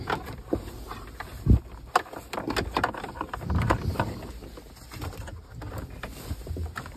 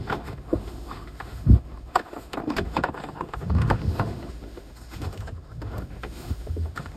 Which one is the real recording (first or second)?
first